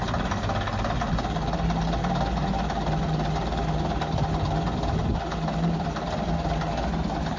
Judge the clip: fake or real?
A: real